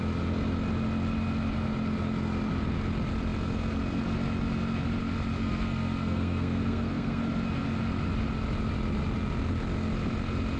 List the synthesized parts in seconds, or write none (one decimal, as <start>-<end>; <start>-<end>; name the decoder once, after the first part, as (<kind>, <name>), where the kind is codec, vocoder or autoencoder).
5.4-7.2 (codec, SNAC)